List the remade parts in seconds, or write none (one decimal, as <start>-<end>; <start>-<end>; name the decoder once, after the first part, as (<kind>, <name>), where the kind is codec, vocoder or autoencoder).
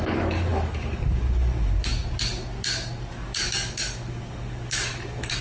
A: 0.0-1.9 (codec, DAC); 3.1-5.4